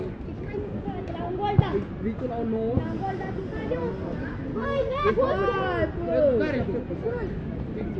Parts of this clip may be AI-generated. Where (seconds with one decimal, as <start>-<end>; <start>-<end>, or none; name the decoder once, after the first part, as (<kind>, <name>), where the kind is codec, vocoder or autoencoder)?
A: 4.5-5.1 (codec, SNAC)